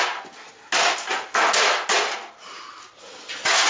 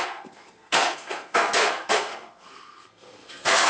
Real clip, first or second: first